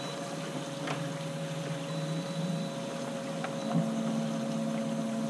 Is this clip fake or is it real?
real